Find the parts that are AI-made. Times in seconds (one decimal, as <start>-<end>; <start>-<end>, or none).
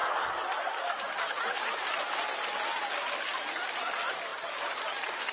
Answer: none